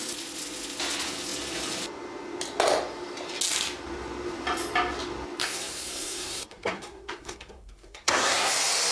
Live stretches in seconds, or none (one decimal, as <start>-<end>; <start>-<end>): 0.0-5.4; 8.5-8.9